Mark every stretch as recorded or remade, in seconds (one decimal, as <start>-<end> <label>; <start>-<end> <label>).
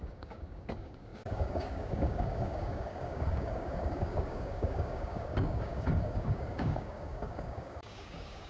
0.0-8.5 remade